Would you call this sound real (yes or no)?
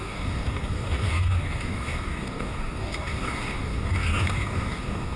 no